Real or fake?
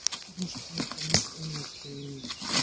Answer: real